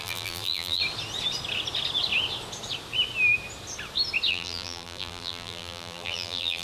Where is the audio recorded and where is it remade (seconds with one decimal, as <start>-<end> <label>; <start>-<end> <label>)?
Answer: 0.0-0.8 remade; 0.8-4.3 recorded; 4.3-6.6 remade